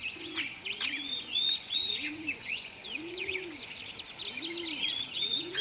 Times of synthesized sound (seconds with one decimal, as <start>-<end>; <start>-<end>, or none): 0.0-3.8; 4.8-5.6